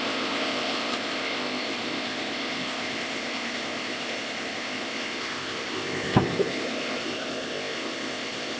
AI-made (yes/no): yes